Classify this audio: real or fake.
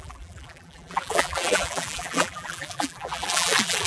fake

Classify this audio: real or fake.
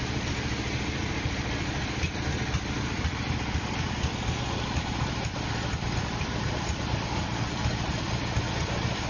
fake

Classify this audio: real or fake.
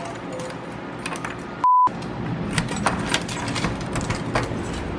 real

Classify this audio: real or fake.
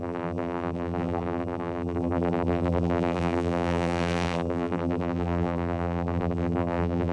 fake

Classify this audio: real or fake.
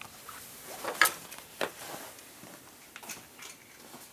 real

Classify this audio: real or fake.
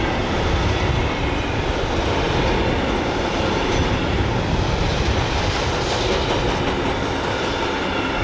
real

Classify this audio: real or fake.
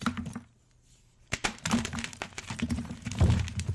fake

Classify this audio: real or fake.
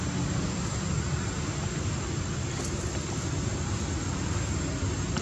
real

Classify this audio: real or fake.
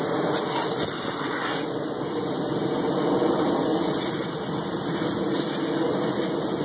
real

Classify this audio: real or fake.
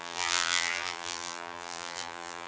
fake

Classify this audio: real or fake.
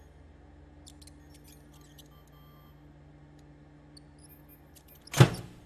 real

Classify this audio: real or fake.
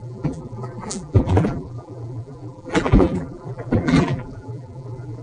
fake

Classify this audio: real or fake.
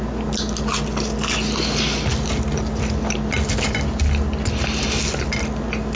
real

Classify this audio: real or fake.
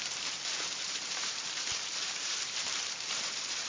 fake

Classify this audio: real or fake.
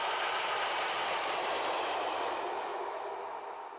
real